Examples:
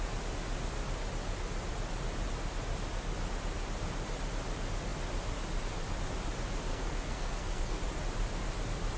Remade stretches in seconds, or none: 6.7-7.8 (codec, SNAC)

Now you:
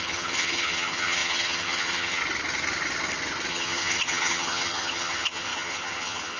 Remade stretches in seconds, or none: 0.0-2.2 (vocoder, HiFi-GAN); 3.5-6.4

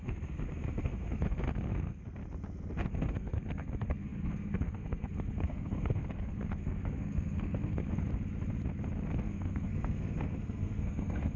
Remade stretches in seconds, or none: 0.0-2.2 (codec, SNAC); 2.9-7.9; 9.2-11.4

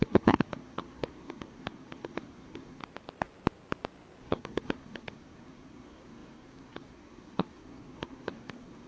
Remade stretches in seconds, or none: 0.0-2.8 (codec, SNAC); 4.2-8.9

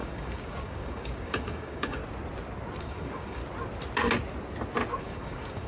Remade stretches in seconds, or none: 0.0-2.0 (codec, DAC); 2.8-3.4; 5.0-5.7

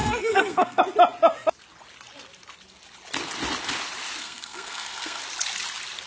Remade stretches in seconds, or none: 0.0-0.8 (codec, SNAC); 4.2-5.2

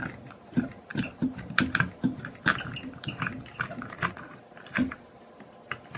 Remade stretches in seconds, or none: none

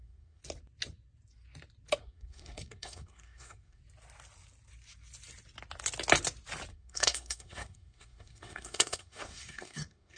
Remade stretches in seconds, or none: 0.0-0.4 (codec, SNAC); 2.0-3.8; 6.7-10.2